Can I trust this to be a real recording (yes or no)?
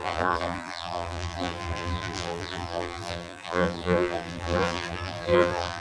no